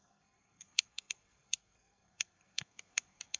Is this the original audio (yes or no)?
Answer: no